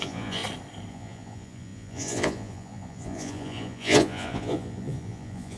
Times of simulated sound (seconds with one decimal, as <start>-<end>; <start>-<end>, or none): 0.0-0.4; 0.9-5.6